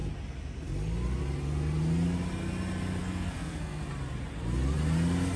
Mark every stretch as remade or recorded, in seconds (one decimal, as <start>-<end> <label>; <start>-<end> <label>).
0.0-3.0 recorded; 3.0-3.8 remade; 3.8-5.4 recorded

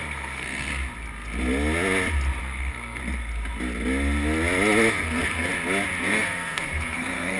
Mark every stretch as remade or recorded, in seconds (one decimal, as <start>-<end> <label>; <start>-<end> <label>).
0.0-0.7 remade; 0.7-2.4 recorded; 2.4-3.0 remade; 3.0-4.9 recorded; 4.9-5.5 remade; 5.5-6.0 recorded; 6.0-7.4 remade

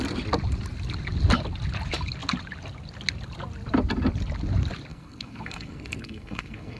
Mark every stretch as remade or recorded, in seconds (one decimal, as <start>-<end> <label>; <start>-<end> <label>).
0.0-4.9 recorded; 4.9-6.8 remade

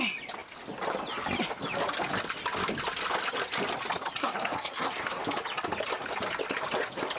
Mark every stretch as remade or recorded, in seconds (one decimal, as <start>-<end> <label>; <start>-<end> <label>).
0.0-4.2 recorded; 4.2-5.2 remade; 5.2-7.2 recorded

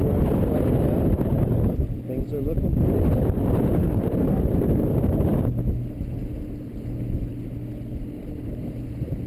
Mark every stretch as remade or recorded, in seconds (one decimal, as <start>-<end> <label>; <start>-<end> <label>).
0.0-3.8 recorded; 3.8-4.4 remade; 4.4-9.3 recorded